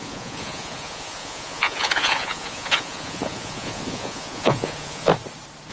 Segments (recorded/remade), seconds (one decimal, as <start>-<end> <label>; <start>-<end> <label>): 0.0-5.1 remade; 5.1-5.7 recorded